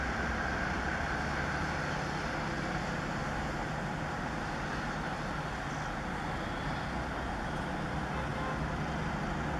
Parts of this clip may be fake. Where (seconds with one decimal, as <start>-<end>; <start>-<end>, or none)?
none